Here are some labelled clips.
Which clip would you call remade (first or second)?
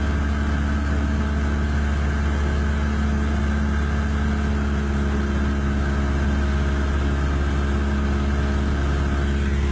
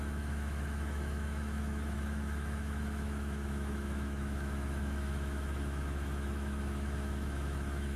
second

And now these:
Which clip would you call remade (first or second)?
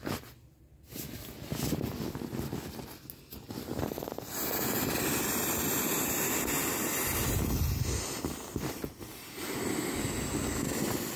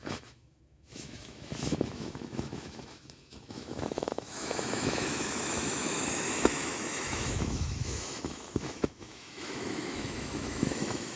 second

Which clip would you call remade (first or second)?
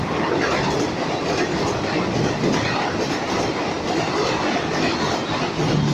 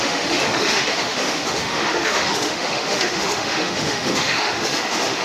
second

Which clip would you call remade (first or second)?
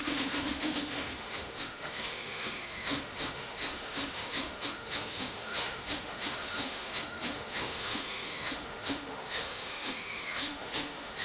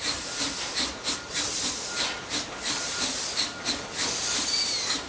first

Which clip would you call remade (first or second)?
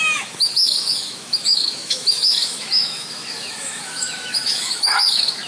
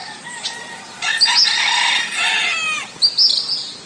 first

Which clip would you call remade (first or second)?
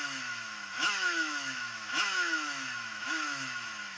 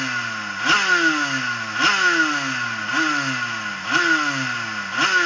first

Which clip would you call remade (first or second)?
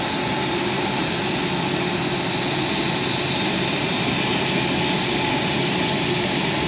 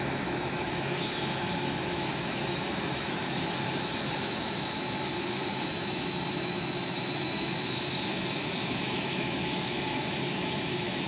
second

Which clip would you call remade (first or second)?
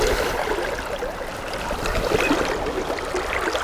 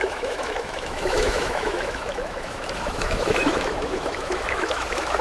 second